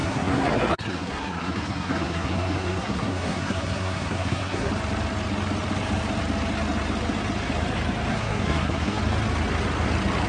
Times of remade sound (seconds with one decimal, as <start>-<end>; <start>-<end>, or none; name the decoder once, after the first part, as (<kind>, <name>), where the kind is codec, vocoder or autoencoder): 0.0-4.7 (codec, SNAC); 8.1-9.0